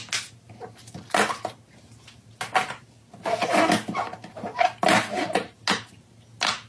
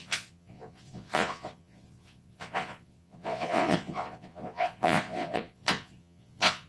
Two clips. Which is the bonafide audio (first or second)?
first